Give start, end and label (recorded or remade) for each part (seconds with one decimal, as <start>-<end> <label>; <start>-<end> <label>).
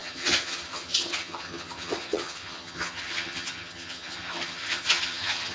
0.0-5.5 remade